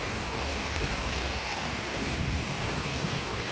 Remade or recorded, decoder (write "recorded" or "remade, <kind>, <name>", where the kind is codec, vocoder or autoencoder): remade, codec, DAC